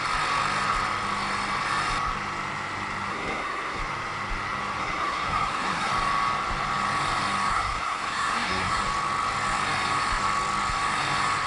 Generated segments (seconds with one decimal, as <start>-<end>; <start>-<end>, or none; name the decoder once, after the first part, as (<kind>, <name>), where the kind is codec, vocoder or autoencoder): 3.1-3.8 (codec, SNAC); 4.8-5.9; 7.5-8.8